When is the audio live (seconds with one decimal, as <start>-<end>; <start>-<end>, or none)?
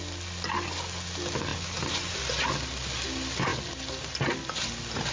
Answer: 0.0-5.1